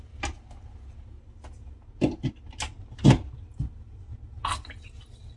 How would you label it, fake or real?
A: real